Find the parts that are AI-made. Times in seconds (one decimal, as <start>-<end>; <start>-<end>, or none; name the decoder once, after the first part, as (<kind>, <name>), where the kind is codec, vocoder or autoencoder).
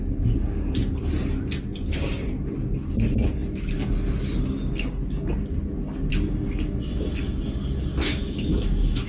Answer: 7.9-9.1 (autoencoder, DAC-VAE)